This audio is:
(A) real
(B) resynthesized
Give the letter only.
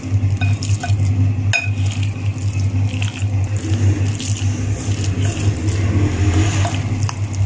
A